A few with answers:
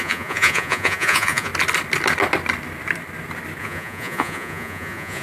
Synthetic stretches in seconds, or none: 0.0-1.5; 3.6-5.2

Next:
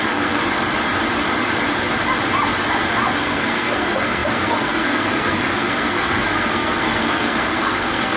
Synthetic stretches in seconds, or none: 0.0-0.4; 3.2-8.2